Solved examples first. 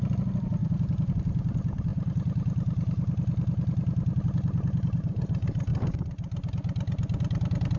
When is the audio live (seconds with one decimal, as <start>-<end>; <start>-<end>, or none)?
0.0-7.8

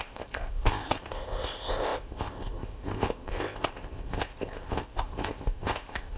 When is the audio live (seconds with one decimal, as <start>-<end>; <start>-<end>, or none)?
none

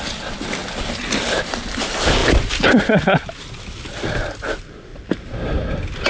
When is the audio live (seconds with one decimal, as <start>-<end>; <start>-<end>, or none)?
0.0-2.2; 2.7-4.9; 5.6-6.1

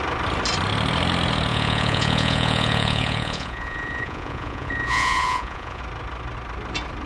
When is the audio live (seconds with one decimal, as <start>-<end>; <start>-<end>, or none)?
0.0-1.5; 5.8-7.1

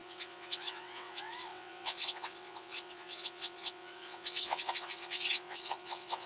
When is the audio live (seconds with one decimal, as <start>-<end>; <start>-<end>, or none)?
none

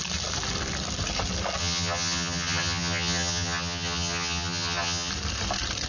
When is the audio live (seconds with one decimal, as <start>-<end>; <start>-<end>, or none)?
0.0-1.6; 5.1-5.9

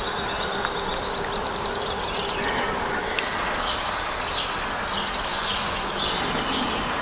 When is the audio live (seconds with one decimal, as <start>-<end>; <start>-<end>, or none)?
0.0-5.3; 5.9-7.0